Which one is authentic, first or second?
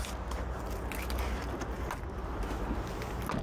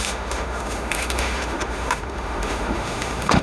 first